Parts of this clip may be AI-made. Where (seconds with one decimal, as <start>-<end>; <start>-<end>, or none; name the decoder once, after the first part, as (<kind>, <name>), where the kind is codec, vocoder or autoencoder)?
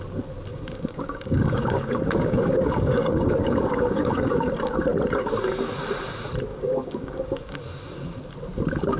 0.5-4.5 (codec, DAC); 6.5-7.6